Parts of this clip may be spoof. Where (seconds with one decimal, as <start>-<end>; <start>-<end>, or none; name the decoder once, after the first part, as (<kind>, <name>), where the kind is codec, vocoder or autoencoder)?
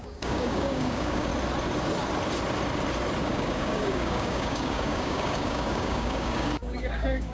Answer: 0.0-1.3 (codec, DAC); 3.2-7.3